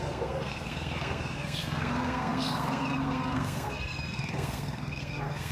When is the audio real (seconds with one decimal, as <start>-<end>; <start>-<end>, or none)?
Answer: none